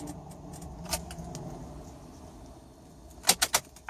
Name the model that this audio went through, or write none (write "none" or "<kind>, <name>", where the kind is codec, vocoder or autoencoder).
none